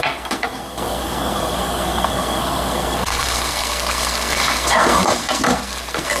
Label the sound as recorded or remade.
remade